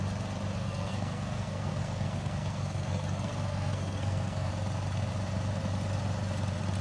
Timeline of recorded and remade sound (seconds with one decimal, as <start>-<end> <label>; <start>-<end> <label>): 0.0-0.6 recorded; 0.6-4.5 remade; 4.5-6.8 recorded